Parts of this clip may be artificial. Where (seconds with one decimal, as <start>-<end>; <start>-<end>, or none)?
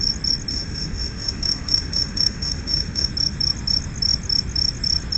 0.5-3.1